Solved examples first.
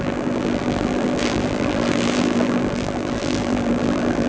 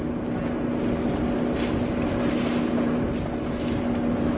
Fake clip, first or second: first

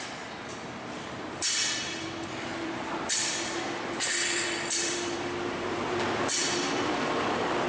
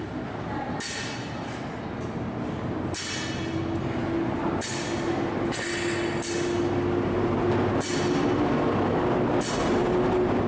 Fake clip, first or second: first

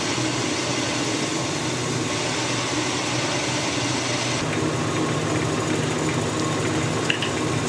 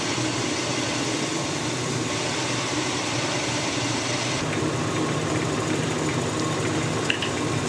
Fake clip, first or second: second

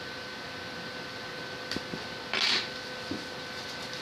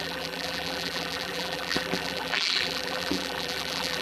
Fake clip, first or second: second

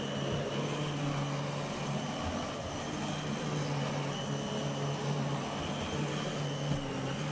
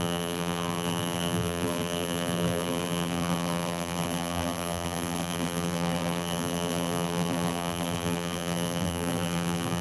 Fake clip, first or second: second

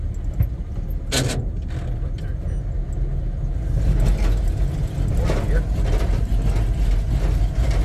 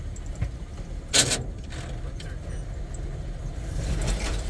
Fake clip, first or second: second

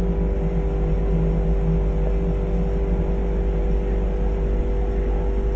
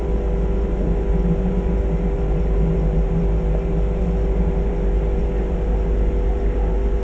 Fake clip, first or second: second